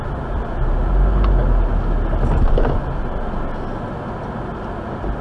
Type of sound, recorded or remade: recorded